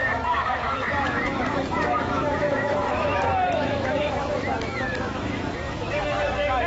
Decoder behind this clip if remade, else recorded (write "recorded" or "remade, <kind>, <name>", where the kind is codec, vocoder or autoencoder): remade, autoencoder, DAC-VAE